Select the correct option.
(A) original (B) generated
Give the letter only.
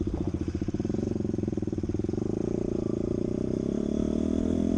B